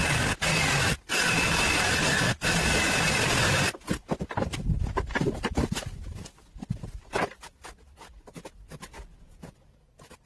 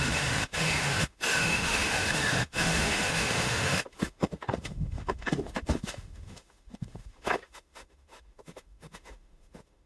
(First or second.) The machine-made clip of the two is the second